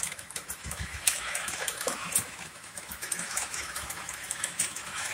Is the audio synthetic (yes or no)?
yes